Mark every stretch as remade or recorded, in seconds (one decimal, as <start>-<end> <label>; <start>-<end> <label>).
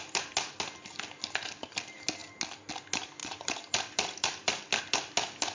0.0-3.2 recorded; 3.2-4.8 remade; 4.8-5.5 recorded